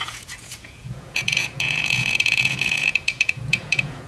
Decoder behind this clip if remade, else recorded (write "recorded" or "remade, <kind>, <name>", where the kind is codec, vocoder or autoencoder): remade, vocoder, Vocos